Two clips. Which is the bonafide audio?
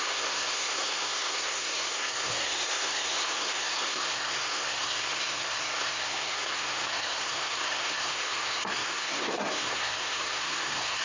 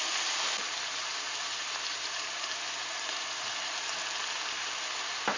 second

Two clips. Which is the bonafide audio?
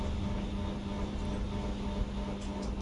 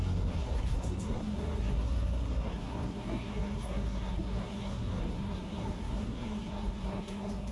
first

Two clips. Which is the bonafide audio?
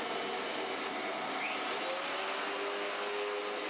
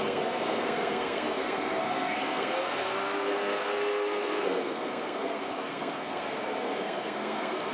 first